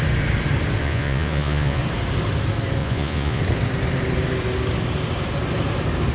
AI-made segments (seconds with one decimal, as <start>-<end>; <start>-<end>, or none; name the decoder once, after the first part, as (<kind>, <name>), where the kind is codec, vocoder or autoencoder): 0.8-1.8 (vocoder, Vocos); 2.8-3.4